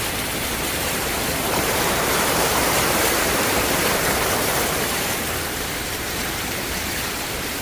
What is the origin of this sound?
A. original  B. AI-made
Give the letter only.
B